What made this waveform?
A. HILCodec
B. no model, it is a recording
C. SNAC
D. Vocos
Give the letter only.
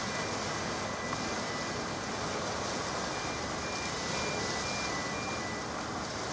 B